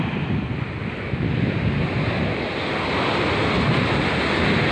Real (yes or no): yes